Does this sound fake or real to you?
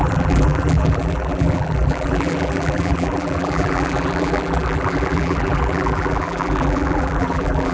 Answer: fake